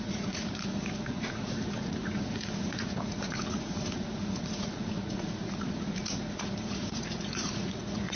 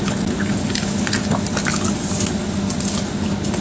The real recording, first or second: second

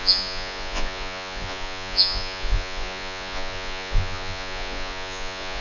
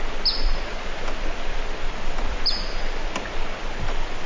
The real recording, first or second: second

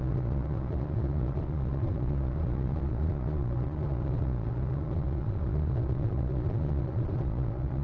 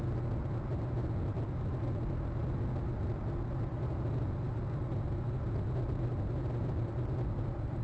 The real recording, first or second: second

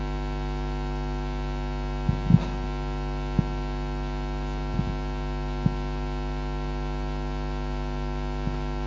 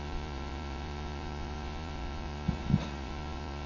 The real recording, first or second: first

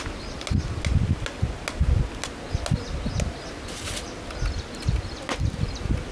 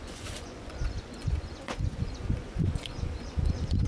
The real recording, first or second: first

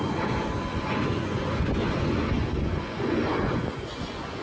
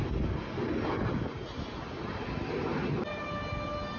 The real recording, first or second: second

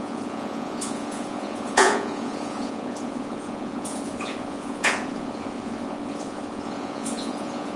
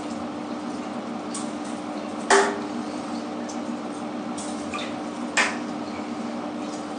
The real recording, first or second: second